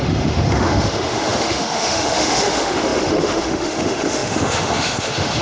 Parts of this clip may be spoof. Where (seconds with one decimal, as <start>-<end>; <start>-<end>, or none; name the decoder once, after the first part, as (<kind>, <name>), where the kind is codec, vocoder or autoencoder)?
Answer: 0.0-5.4 (autoencoder, DAC-VAE)